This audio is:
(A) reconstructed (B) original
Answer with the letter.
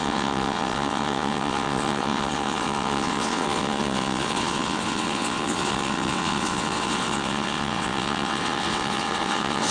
A